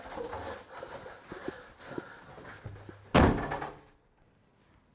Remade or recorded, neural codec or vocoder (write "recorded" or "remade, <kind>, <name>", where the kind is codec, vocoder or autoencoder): recorded